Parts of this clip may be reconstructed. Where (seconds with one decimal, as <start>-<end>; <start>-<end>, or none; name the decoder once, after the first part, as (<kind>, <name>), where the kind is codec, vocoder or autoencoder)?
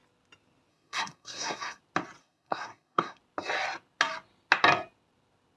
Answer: 0.7-1.8 (codec, SNAC); 2.2-3.2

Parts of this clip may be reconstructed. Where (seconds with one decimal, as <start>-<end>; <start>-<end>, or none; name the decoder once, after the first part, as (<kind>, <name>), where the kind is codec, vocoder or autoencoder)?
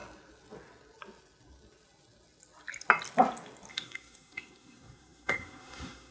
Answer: 3.7-6.1 (codec, SNAC)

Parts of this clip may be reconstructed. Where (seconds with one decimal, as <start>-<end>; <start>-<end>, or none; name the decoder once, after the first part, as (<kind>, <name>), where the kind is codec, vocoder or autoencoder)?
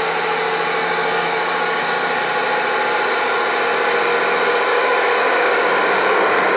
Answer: 0.8-2.2 (codec, DAC); 4.7-6.6